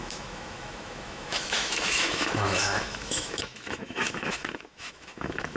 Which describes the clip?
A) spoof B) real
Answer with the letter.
A